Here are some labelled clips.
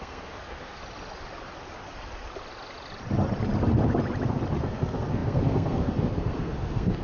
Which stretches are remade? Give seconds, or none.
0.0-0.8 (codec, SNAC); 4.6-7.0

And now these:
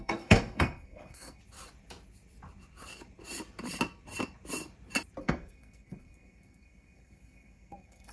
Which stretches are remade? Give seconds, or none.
0.0-1.4 (codec, SNAC); 5.2-8.1

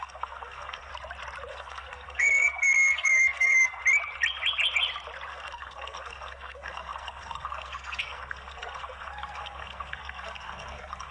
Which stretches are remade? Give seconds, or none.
0.0-0.9 (codec, SNAC); 1.5-3.8; 5.3-11.1